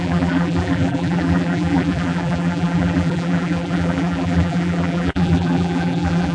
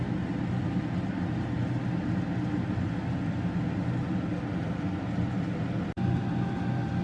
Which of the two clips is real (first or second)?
second